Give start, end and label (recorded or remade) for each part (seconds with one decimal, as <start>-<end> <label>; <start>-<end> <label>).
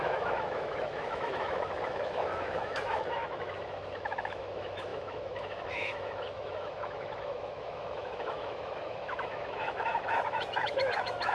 0.0-11.3 remade